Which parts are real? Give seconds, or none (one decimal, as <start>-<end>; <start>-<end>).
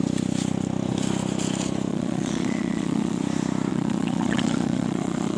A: 0.0-1.9; 3.2-3.7